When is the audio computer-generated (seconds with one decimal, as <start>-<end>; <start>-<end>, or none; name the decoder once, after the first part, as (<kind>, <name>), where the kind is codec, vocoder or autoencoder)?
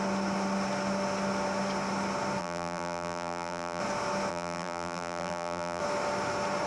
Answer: 2.4-3.8 (vocoder, BigVGAN v2); 4.3-5.8